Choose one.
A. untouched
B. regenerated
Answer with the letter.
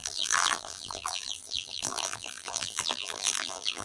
B